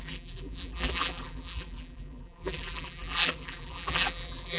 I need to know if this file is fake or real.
fake